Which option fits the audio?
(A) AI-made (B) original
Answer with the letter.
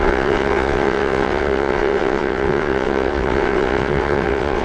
A